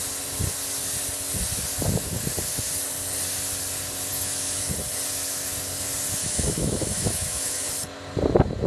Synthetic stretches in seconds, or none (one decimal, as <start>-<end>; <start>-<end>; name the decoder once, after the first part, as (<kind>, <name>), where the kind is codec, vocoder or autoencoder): 4.1-4.7 (autoencoder, DAC-VAE); 6.2-7.7